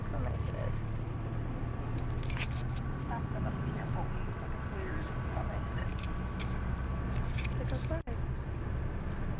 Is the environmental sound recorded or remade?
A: recorded